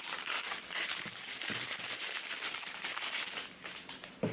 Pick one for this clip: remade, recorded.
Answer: remade